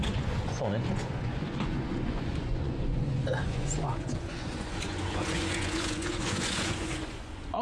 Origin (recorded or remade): remade